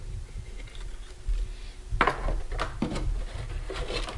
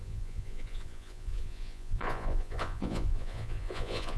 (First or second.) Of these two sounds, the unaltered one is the first